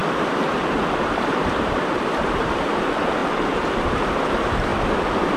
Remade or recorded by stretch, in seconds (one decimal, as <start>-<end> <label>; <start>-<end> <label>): 0.0-0.6 recorded; 0.6-3.2 remade; 3.2-3.8 recorded; 3.8-4.7 remade; 4.7-5.4 recorded